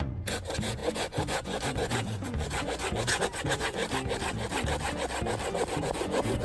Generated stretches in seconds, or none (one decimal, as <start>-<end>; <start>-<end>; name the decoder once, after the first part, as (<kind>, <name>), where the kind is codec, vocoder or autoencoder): 0.0-3.8 (vocoder, Vocos); 5.8-6.4